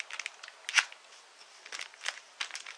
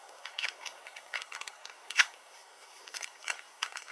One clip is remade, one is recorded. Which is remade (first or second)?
second